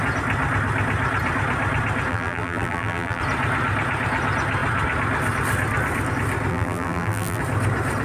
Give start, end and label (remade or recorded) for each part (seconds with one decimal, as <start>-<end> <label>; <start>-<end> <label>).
0.0-2.1 recorded; 2.1-3.2 remade; 3.2-6.5 recorded; 6.5-7.4 remade; 7.4-8.0 recorded